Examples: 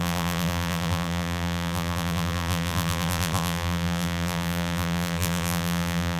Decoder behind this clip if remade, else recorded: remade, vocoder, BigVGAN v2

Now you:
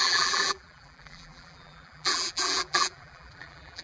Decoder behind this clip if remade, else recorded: remade, vocoder, BigVGAN v2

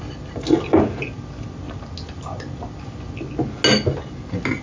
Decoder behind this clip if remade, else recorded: recorded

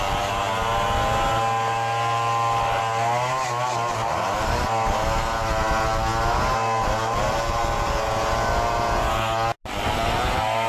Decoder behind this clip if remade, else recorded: recorded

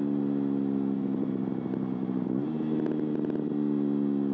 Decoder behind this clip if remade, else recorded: recorded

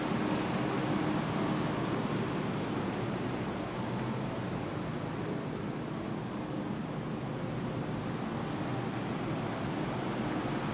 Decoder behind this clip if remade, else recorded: recorded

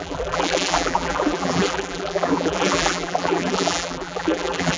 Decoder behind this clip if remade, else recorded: remade, vocoder, BigVGAN v2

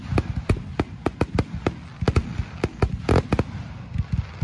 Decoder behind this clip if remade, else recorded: recorded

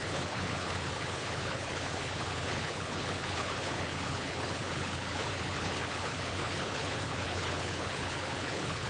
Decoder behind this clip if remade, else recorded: remade, codec, HILCodec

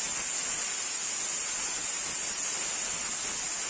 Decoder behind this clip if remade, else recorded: recorded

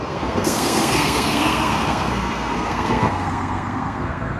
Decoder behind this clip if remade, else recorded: remade, codec, SNAC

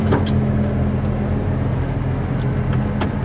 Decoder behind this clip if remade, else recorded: recorded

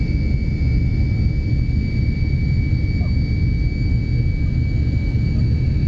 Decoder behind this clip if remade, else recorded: recorded